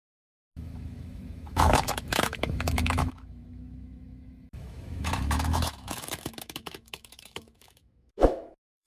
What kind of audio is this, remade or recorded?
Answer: remade